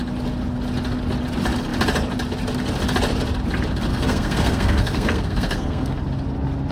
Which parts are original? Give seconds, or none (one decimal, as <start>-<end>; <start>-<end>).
0.0-3.9; 6.0-6.7